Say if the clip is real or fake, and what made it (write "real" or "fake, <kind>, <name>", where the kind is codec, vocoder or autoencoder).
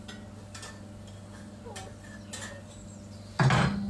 real